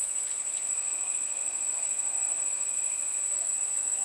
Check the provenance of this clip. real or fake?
fake